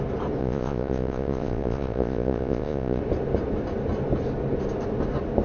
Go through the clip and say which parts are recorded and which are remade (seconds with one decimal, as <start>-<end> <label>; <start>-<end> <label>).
0.0-0.4 recorded; 0.4-3.0 remade; 3.0-5.4 recorded